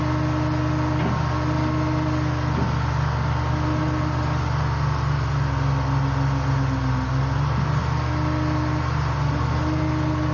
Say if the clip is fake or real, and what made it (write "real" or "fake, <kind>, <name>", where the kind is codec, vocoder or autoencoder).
real